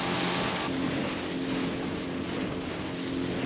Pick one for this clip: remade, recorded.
recorded